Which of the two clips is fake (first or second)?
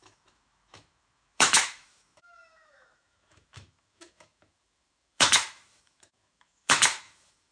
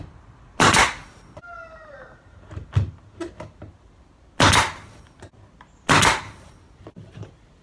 first